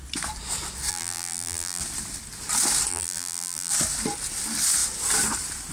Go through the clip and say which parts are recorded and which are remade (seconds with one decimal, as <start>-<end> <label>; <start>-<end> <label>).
0.0-0.9 recorded; 0.9-1.8 remade; 1.8-2.9 recorded; 2.9-3.7 remade; 3.7-5.7 recorded